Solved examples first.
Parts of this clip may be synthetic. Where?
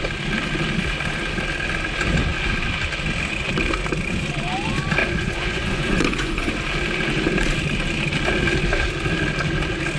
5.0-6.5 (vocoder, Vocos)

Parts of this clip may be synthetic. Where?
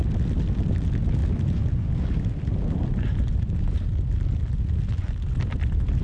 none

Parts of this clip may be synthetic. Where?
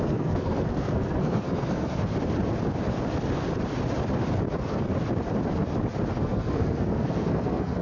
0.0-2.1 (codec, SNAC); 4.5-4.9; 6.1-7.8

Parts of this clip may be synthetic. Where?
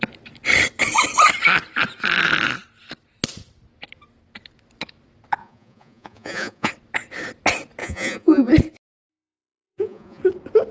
5.4-6.7 (vocoder, Vocos); 7.8-8.5; 9.1-10.2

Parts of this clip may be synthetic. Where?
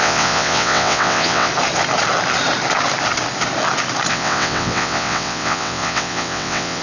0.0-1.5 (vocoder, WaveNeXt); 4.1-6.8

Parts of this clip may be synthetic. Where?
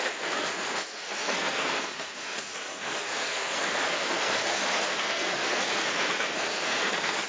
0.0-7.3 (codec, SNAC)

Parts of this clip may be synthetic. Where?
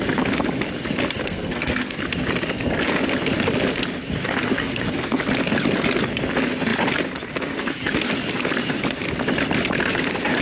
1.2-2.0 (codec, SNAC); 4.6-5.2